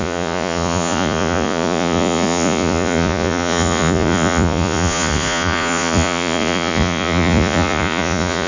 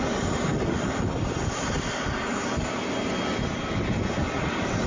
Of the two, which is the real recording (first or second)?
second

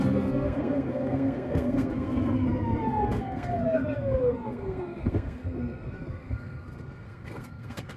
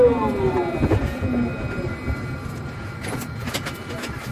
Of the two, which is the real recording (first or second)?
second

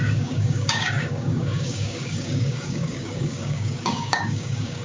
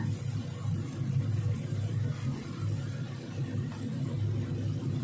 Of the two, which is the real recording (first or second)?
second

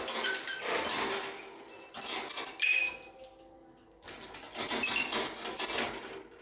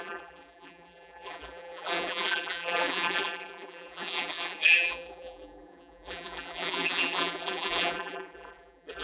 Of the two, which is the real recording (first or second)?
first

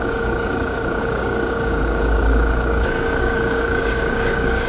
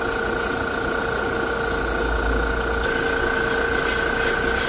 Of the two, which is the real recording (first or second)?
second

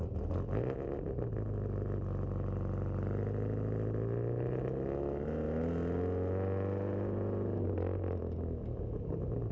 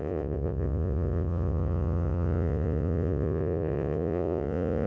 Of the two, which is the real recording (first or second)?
first